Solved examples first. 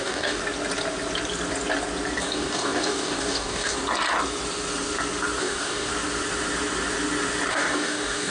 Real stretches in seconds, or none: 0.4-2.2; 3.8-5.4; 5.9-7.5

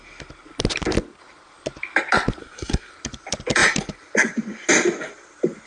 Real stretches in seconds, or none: 0.0-2.4; 2.9-5.7

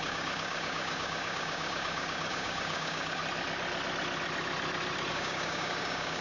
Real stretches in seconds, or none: 3.2-5.1

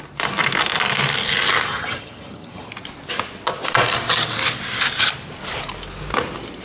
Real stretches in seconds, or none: 0.0-1.7; 2.7-6.6

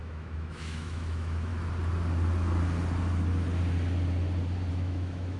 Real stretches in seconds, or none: 1.5-4.7

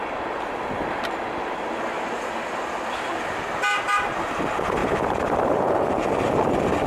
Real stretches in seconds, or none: 0.0-4.8; 5.8-6.9

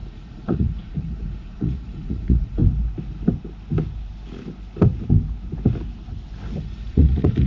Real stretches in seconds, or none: 2.6-6.6

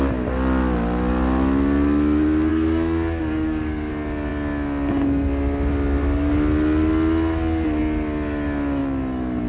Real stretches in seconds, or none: 0.0-2.5; 3.9-9.5